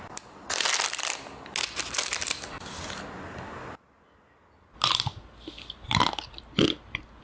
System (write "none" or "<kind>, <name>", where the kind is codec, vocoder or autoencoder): none